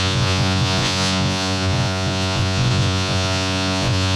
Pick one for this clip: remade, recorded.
remade